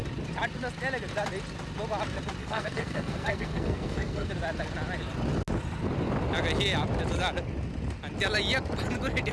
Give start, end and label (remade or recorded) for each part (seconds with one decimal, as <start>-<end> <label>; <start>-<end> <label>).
0.0-2.4 recorded; 2.4-4.3 remade; 4.3-9.3 recorded